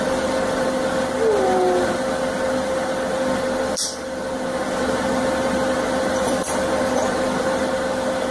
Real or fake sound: fake